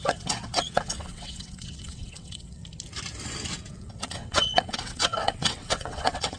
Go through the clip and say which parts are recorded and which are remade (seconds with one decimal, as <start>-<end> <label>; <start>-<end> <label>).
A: 0.0-2.6 remade; 2.6-3.7 recorded; 3.7-6.4 remade